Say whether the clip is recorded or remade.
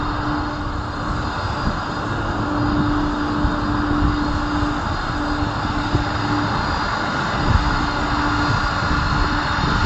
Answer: recorded